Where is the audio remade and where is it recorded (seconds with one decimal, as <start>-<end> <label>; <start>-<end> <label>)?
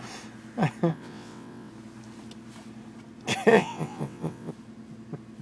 0.0-0.9 recorded; 0.9-1.7 remade; 1.7-3.5 recorded; 3.5-4.5 remade; 4.5-5.4 recorded